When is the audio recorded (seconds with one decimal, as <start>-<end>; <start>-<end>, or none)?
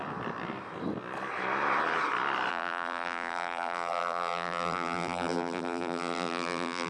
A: 0.0-2.5